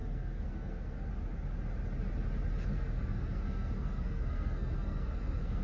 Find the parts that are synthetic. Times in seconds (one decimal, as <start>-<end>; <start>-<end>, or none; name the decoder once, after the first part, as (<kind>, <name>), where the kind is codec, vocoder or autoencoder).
0.0-1.1 (codec, SNAC); 2.7-5.6